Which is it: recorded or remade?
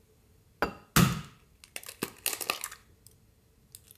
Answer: recorded